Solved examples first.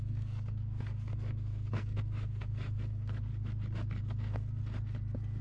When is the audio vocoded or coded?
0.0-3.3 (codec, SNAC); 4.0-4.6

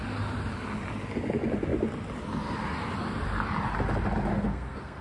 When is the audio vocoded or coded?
4.3-5.0 (codec, SNAC)

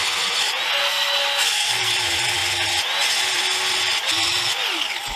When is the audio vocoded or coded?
0.8-1.9 (codec, SNAC)

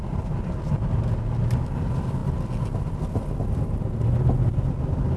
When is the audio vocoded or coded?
none

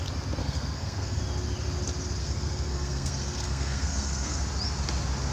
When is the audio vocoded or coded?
0.4-1.2 (codec, SNAC); 2.2-4.4

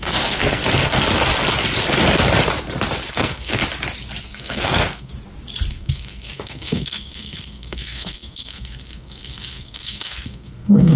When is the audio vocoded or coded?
0.0-0.6 (codec, SNAC); 3.1-3.6; 4.2-5.1; 5.7-11.0

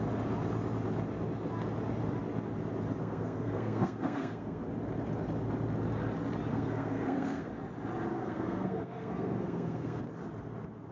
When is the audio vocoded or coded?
3.0-4.6 (codec, SNAC); 6.5-7.5; 8.1-10.0

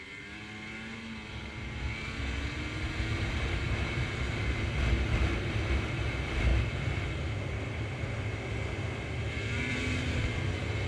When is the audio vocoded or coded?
none